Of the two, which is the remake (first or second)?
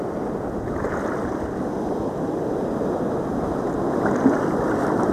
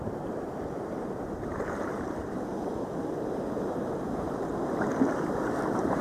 second